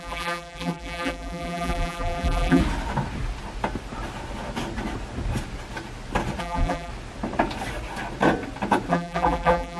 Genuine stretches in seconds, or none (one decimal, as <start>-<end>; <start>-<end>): 2.6-6.4; 6.9-8.9